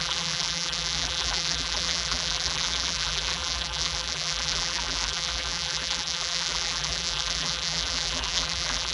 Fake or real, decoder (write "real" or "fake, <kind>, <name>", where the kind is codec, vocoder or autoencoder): fake, vocoder, BigVGAN v2